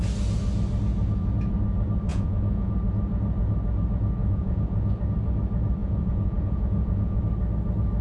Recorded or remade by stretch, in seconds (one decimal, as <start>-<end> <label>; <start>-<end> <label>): 0.0-2.1 recorded; 2.1-2.7 remade; 2.7-4.2 recorded; 4.2-5.0 remade; 5.0-5.8 recorded; 5.8-7.2 remade; 7.2-8.0 recorded